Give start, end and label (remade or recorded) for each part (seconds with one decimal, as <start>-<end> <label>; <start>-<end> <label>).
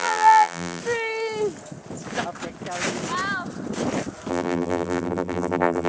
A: 0.0-0.8 remade; 0.8-4.3 recorded; 4.3-5.9 remade